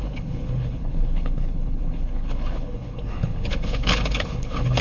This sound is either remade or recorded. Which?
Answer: remade